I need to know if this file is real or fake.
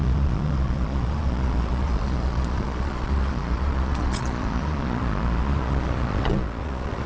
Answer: fake